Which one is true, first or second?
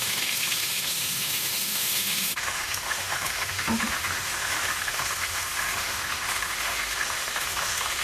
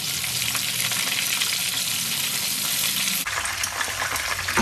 second